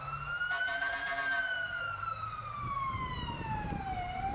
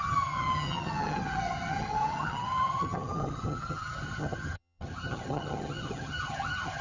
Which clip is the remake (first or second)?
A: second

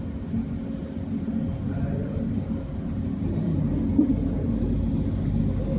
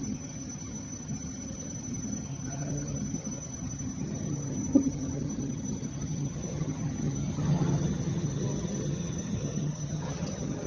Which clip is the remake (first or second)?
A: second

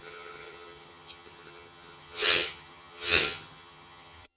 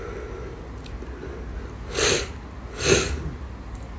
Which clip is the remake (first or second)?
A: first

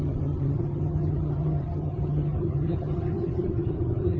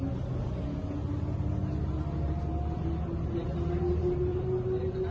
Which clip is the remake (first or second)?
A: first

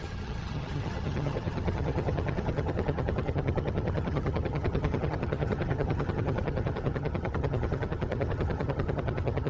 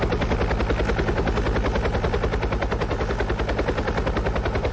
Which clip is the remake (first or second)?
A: first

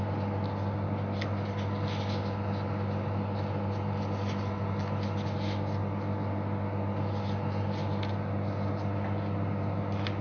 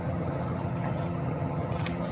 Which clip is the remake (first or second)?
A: second